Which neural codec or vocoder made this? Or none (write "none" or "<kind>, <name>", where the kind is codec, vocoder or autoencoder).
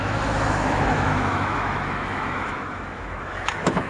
autoencoder, DAC-VAE